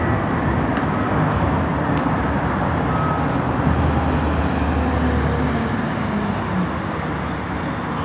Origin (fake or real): real